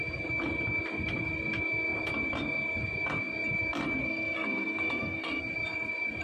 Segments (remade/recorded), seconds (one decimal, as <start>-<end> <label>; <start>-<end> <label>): 0.0-4.0 recorded; 4.0-5.4 remade; 5.4-6.2 recorded